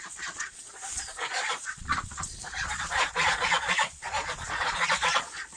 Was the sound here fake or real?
fake